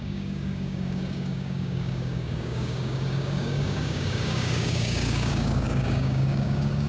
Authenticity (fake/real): fake